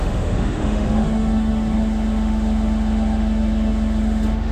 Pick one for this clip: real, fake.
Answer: fake